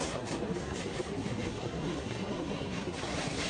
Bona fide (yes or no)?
no